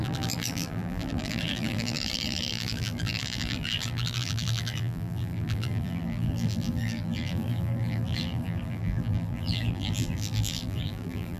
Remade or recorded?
remade